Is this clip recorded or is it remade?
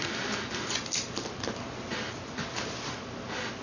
recorded